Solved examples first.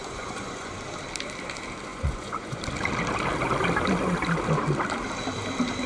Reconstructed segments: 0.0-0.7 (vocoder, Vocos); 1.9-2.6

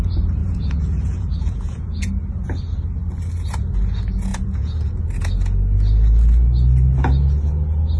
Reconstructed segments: 0.4-2.1 (vocoder, Vocos); 4.3-4.9